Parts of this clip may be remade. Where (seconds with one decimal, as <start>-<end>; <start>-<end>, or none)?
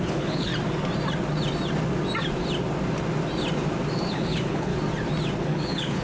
0.0-0.5; 4.1-4.7; 5.4-6.0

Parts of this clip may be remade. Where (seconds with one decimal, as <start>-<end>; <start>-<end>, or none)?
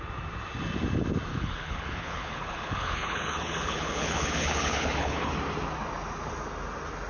1.3-5.3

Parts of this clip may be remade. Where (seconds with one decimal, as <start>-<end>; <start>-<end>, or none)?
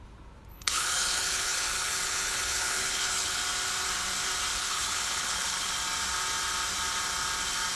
0.5-3.4; 4.5-5.7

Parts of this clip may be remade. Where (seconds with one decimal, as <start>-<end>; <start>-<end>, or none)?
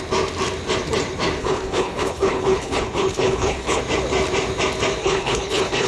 1.4-3.8; 5.0-5.9